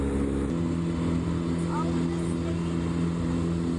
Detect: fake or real real